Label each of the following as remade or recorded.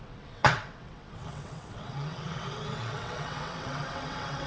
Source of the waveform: remade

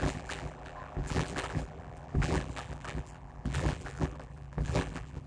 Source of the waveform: remade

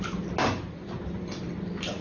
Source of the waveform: recorded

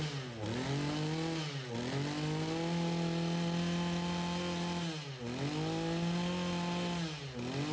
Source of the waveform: recorded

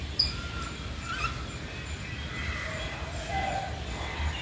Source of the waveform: recorded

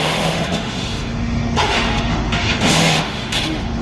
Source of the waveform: remade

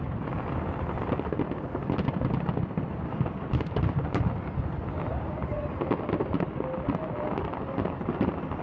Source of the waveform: recorded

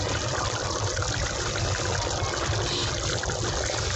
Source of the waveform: recorded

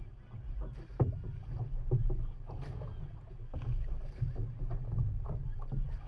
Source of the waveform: recorded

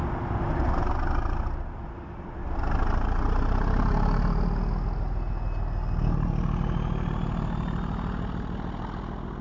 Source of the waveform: recorded